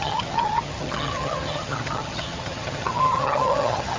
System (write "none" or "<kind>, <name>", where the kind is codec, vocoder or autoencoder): vocoder, HiFi-GAN